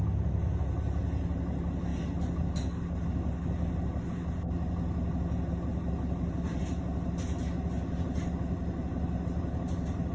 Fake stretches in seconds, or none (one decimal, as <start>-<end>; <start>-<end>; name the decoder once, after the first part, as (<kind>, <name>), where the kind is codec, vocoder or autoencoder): none